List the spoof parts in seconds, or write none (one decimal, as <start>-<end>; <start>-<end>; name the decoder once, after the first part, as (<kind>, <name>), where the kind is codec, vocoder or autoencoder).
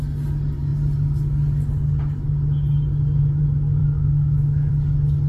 3.8-4.7 (autoencoder, DAC-VAE)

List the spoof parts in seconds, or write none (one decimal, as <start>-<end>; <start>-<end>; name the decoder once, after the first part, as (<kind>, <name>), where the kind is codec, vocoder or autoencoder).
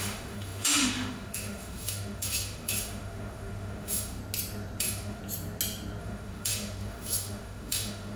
0.0-4.2 (autoencoder, DAC-VAE); 4.8-5.2; 6.0-8.2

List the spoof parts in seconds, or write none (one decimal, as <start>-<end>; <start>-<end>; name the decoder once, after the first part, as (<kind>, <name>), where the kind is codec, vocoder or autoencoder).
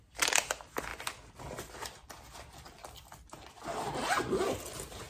none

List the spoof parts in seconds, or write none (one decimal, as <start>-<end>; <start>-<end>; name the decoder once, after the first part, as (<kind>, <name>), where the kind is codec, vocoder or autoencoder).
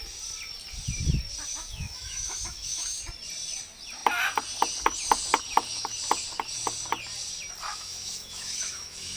1.5-3.0 (autoencoder, DAC-VAE); 7.7-9.2